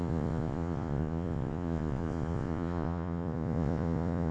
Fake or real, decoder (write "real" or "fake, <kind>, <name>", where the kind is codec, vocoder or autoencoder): fake, vocoder, Vocos